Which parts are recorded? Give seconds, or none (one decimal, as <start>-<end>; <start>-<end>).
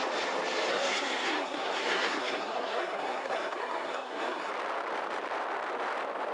0.0-0.7; 4.5-6.3